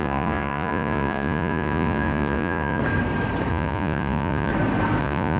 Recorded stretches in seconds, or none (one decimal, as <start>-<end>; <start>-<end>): 2.8-3.5; 4.5-5.0